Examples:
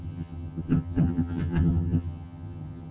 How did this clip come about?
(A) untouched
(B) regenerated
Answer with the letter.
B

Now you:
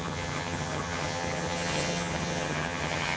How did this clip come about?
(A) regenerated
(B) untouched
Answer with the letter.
A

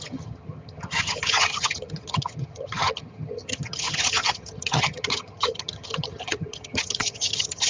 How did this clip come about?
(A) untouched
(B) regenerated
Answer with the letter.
B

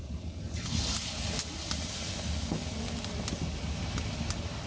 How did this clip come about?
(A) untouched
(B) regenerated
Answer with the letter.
A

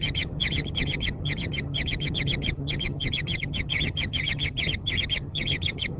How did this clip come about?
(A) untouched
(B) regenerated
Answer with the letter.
B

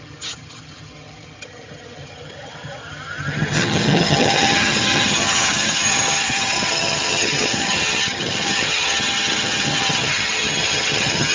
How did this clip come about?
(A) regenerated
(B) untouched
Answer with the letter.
A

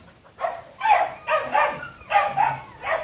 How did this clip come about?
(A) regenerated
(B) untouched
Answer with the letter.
B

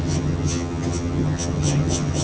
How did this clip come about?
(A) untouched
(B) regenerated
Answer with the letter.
B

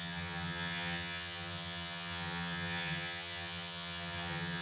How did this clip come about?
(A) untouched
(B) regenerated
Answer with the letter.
B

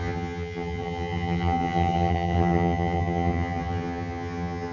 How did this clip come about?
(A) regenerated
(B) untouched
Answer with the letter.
A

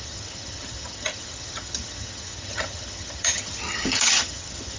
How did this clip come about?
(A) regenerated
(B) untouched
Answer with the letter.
A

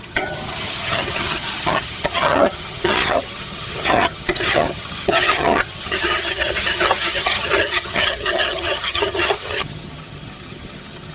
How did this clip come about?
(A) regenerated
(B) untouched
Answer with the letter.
A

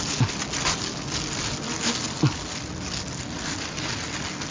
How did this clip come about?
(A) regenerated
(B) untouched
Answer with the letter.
B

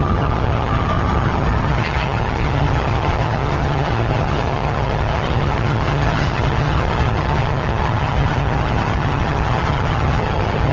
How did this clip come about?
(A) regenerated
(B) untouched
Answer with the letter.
A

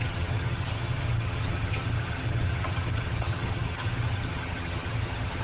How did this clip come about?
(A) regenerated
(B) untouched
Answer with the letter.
A